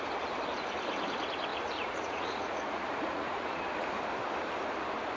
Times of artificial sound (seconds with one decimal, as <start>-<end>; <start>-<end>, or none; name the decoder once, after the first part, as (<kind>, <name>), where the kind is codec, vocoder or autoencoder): 1.5-3.6 (vocoder, Vocos)